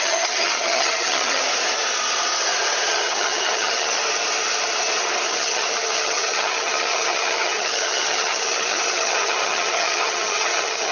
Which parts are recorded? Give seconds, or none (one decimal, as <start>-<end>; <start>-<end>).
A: 1.4-2.9; 4.0-5.3

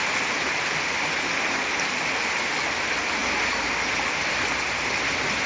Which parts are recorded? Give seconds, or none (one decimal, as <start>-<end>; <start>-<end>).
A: 0.0-5.5

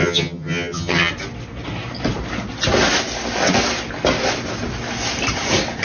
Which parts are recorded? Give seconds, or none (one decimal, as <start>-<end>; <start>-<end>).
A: 1.1-5.8

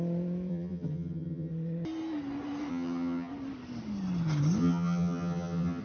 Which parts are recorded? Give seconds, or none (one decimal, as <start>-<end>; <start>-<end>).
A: 0.0-0.5; 1.5-2.7; 3.3-4.6

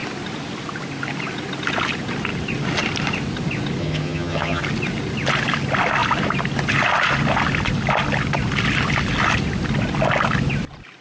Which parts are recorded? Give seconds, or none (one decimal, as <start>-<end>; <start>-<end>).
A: 0.0-3.8; 4.6-11.0

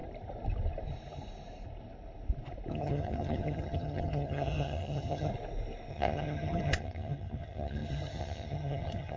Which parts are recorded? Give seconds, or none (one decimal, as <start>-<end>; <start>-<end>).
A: 0.0-2.7; 5.3-5.9